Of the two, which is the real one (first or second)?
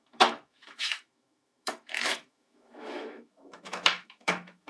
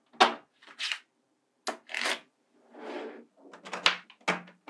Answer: second